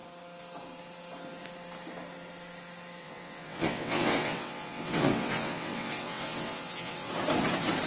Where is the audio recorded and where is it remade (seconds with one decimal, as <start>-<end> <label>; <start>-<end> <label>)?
0.0-3.0 recorded; 3.0-7.1 remade; 7.1-7.9 recorded